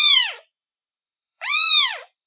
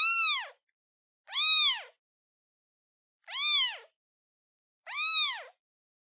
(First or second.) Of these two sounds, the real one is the second